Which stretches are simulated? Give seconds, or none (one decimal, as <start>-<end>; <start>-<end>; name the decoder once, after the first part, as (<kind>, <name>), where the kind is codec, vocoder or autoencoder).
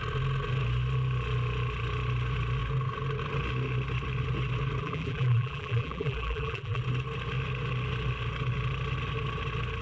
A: 4.8-6.8 (vocoder, BigVGAN v2)